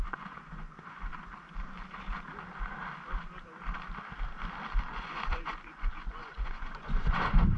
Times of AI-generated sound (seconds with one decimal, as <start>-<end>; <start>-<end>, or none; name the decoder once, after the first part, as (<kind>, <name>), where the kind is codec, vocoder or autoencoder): 0.0-1.1 (vocoder, Vocos); 4.9-7.6